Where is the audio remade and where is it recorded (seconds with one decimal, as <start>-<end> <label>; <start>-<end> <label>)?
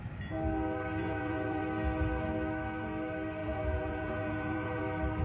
0.0-1.0 recorded; 1.0-1.6 remade; 1.6-3.4 recorded; 3.4-4.8 remade; 4.8-5.2 recorded